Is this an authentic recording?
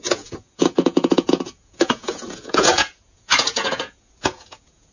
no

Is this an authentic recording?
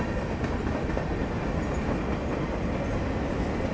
yes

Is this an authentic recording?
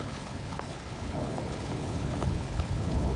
no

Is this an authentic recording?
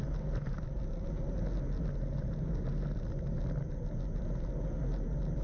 yes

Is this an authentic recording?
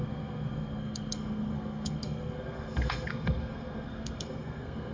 no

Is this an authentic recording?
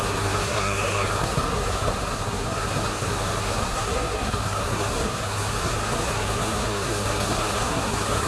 no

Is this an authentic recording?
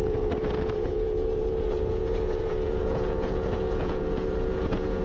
no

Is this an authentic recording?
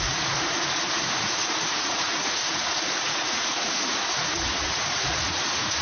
no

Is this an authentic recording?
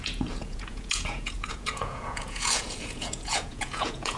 no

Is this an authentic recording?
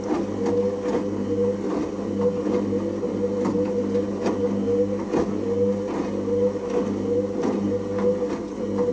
yes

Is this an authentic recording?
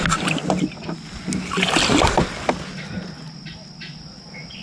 yes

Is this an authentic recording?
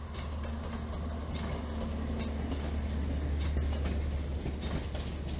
yes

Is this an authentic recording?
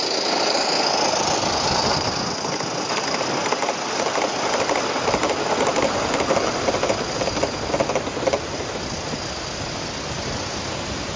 yes